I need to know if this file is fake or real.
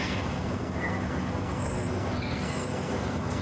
fake